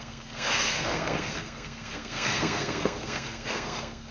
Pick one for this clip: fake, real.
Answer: fake